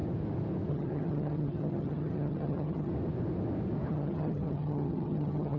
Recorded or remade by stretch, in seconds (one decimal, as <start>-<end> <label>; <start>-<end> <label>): 0.0-0.7 recorded; 0.7-2.9 remade; 2.9-3.9 recorded; 3.9-5.6 remade